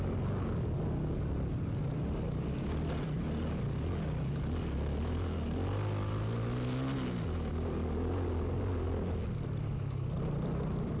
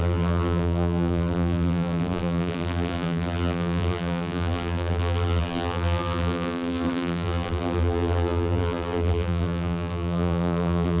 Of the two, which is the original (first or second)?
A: first